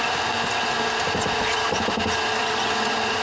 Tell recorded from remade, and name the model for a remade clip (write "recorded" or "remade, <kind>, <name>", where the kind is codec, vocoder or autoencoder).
recorded